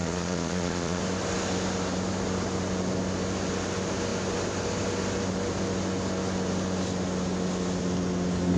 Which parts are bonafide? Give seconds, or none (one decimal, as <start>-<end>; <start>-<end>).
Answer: 1.0-8.6